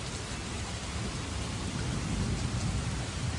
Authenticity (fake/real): real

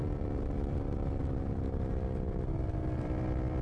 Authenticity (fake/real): fake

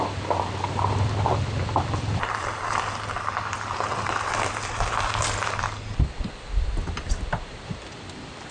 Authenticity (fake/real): real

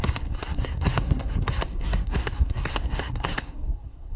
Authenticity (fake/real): fake